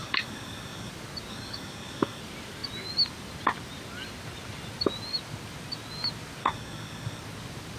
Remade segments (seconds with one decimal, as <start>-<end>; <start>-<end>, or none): 0.0-0.9; 1.3-2.2; 6.4-7.2